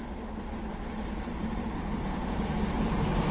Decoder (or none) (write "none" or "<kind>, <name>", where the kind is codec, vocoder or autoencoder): vocoder, BigVGAN v2